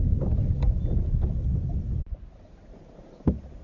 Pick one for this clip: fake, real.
real